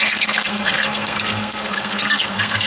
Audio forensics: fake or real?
fake